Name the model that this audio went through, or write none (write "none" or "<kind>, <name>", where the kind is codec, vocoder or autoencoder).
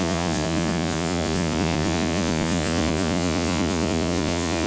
vocoder, Vocos